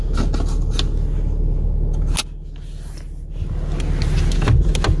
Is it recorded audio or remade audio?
recorded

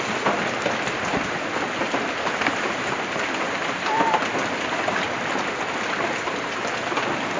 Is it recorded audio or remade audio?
recorded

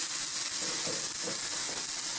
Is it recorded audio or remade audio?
recorded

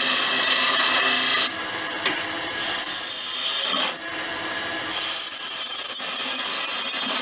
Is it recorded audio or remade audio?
recorded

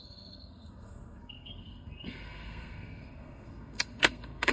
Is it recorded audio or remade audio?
remade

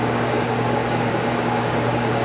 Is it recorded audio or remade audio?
remade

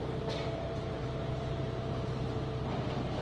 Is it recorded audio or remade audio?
remade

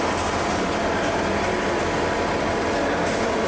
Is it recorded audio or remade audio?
recorded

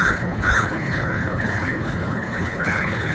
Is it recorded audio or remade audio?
remade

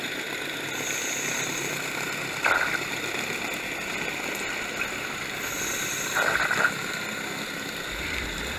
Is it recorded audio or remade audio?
recorded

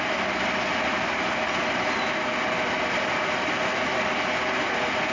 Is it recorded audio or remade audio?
recorded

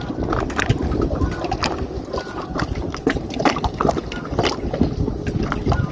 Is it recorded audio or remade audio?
recorded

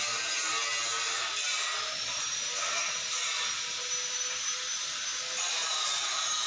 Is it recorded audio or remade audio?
recorded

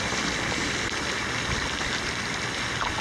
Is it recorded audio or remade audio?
recorded